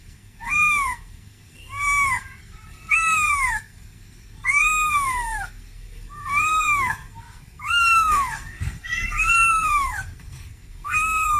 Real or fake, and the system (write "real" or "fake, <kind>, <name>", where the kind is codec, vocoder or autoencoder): fake, codec, SNAC